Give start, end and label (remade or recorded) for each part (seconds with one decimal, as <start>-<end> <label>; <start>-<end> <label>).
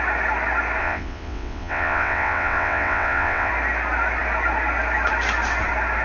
0.0-0.8 recorded; 0.8-3.5 remade; 3.5-6.0 recorded